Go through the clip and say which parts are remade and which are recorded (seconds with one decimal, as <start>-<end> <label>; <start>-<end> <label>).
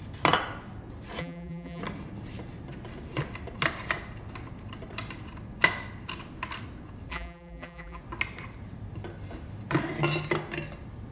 0.0-1.2 recorded; 1.2-1.8 remade; 1.8-7.1 recorded; 7.1-8.0 remade; 8.0-11.1 recorded